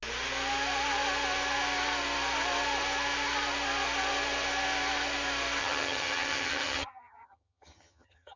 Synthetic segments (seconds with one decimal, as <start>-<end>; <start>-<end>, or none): 5.6-8.4